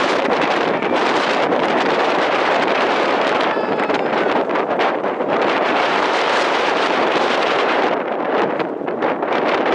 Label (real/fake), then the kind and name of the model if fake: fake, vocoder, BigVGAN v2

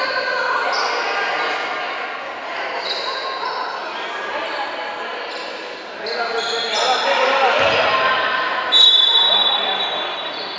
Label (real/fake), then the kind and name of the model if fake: real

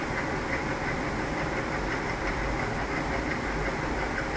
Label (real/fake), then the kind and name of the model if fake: real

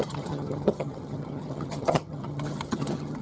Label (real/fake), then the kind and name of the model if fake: fake, vocoder, HiFi-GAN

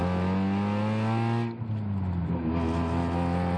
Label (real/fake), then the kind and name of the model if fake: real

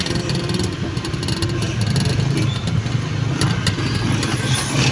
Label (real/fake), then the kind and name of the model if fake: real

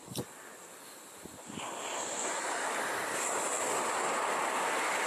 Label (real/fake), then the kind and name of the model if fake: real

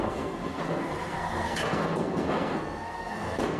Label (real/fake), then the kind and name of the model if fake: fake, codec, SNAC